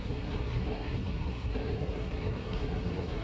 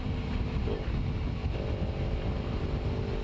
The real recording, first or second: second